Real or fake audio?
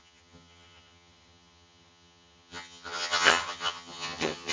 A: fake